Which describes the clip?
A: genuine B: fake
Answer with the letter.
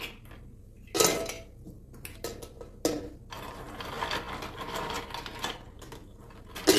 A